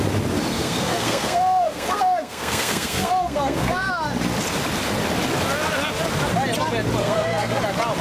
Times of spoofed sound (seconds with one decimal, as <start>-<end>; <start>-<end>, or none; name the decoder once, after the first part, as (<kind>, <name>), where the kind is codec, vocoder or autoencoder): 0.5-3.9 (codec, SNAC); 7.0-7.6